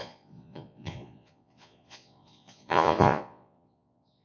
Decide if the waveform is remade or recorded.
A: remade